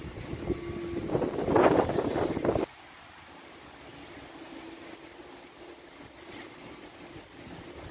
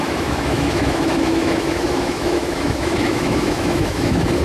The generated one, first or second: second